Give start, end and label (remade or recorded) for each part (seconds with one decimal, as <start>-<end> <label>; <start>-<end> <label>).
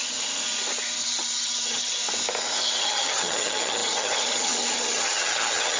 0.0-1.0 recorded; 1.0-2.0 remade; 2.0-2.8 recorded; 2.8-5.8 remade